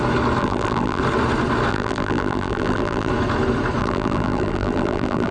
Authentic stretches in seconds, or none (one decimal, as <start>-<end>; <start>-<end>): 0.0-0.4; 1.0-1.7; 3.1-3.8